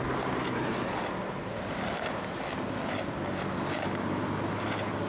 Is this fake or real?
real